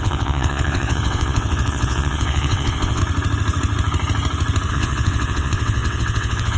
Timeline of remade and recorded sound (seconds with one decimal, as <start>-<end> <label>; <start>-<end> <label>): 0.0-3.0 remade; 3.0-4.7 recorded; 4.7-6.6 remade